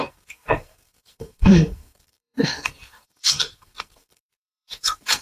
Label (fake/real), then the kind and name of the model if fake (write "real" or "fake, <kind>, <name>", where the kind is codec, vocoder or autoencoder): fake, codec, SNAC